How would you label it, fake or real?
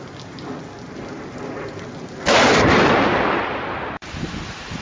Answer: real